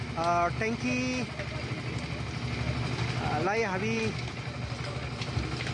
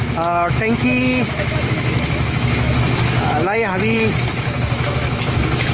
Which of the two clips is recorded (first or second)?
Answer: first